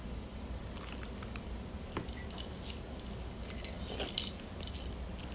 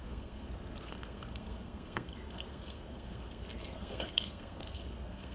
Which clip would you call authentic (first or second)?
first